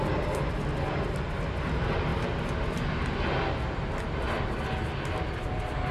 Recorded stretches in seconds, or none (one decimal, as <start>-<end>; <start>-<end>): 0.0-5.9